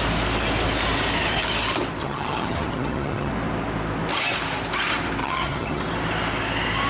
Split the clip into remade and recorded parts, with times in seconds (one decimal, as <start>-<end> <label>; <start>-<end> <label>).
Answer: 0.0-2.0 recorded; 2.0-3.3 remade; 3.3-5.2 recorded; 5.2-5.8 remade; 5.8-6.9 recorded